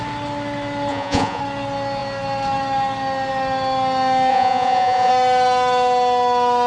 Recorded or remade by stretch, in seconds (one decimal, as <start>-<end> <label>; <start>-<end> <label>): 0.0-0.9 recorded; 0.9-1.4 remade; 1.4-4.3 recorded; 4.3-5.1 remade; 5.1-6.7 recorded